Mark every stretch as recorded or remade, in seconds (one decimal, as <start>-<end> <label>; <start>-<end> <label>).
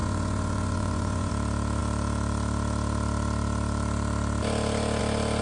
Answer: 0.0-1.3 remade; 1.3-5.4 recorded